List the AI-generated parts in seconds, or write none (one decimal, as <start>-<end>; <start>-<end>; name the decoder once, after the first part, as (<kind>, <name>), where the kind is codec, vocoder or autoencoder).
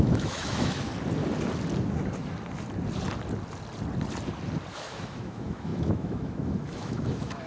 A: 0.0-0.9 (autoencoder, DAC-VAE); 4.7-7.5